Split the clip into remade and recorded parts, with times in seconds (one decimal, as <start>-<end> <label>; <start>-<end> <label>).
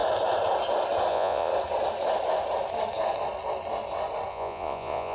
0.0-1.1 recorded; 1.1-1.5 remade; 1.5-4.3 recorded; 4.3-5.1 remade